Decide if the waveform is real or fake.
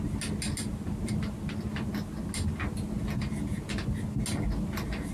real